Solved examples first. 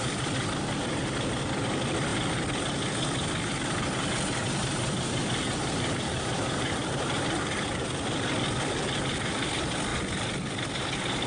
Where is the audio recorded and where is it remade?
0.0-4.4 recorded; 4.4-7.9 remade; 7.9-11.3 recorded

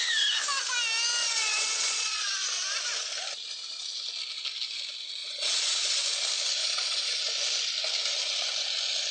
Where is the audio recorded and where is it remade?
0.0-1.2 recorded; 1.2-2.3 remade; 2.3-5.2 recorded; 5.2-6.0 remade; 6.0-6.6 recorded; 6.6-7.2 remade; 7.2-9.1 recorded